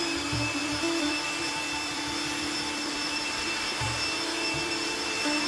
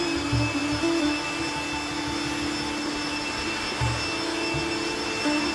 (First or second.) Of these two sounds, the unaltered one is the second